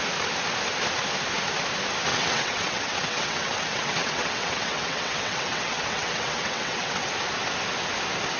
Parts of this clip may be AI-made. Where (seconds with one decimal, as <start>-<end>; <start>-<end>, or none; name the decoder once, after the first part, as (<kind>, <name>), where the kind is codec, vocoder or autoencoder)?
2.1-7.1 (vocoder, WaveNeXt)